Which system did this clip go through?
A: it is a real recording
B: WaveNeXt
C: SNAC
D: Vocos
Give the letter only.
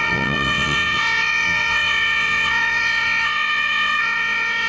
B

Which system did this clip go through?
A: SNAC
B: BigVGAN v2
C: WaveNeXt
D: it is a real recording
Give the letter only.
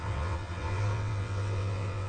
C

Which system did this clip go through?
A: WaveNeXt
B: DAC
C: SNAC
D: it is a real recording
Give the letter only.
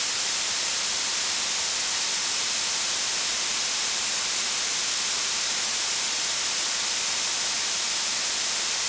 D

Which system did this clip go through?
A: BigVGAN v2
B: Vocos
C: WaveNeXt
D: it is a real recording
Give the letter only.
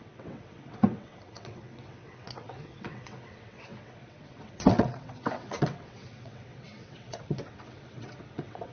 C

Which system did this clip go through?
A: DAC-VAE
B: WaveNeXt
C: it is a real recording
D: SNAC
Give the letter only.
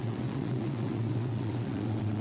B